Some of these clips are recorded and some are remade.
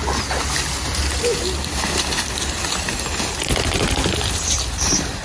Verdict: recorded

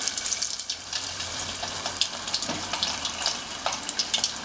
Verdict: remade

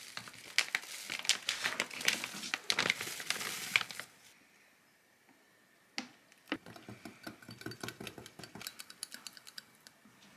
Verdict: recorded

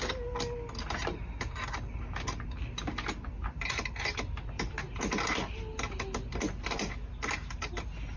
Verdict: recorded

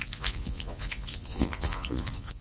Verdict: remade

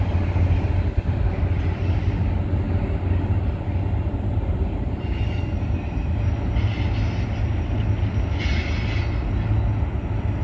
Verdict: recorded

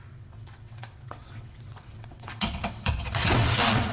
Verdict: remade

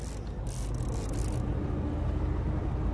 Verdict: recorded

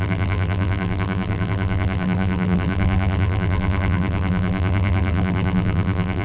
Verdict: remade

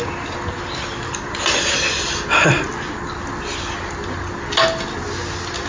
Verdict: recorded